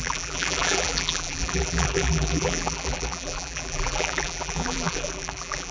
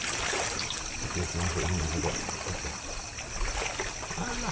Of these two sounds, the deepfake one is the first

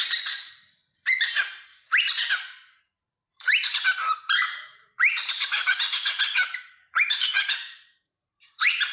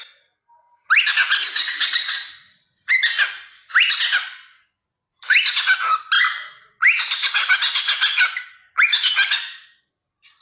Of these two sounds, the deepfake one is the first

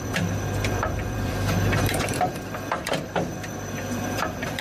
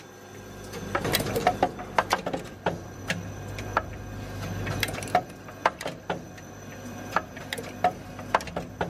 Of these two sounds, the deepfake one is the first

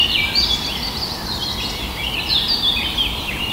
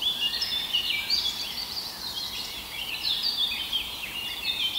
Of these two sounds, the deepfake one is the second